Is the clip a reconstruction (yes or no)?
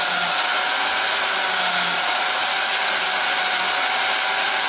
no